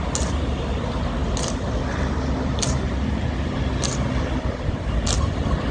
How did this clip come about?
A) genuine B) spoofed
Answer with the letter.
A